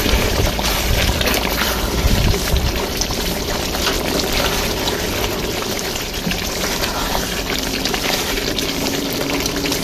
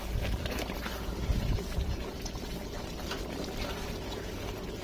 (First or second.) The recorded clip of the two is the second